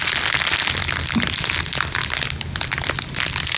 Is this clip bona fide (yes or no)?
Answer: yes